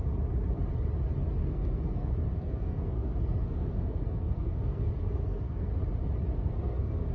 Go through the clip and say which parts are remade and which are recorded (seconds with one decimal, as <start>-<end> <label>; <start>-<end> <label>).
0.0-1.4 recorded; 1.4-5.7 remade; 5.7-6.3 recorded; 6.3-7.1 remade